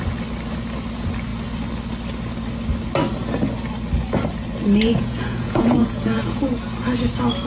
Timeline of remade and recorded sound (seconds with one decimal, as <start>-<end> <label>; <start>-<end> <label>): 0.0-4.9 recorded; 4.9-6.4 remade; 6.4-7.5 recorded